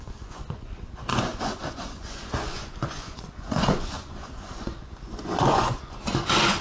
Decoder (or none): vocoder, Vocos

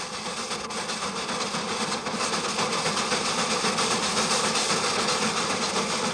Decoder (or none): none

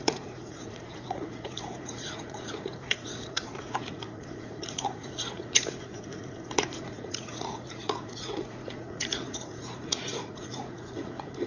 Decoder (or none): vocoder, Vocos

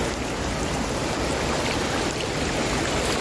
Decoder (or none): none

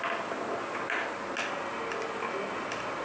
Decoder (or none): none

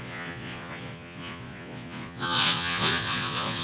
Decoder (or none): vocoder, Vocos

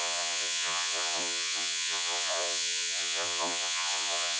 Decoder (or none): vocoder, Vocos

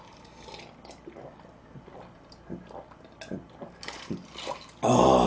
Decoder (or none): none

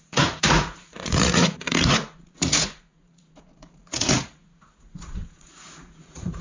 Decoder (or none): vocoder, Vocos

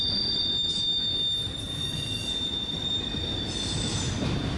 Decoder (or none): none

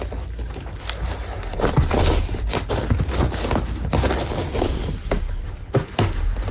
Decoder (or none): none